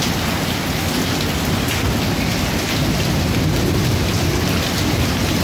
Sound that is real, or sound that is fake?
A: real